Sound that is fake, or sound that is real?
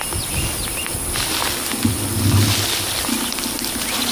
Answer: real